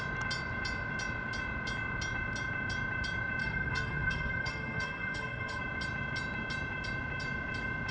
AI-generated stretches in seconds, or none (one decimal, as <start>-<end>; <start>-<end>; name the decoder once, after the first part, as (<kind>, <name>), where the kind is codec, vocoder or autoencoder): 3.4-5.6 (codec, SNAC)